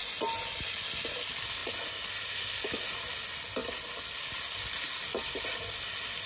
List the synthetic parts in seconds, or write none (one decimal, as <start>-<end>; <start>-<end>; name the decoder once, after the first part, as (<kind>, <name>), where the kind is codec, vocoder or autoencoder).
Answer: none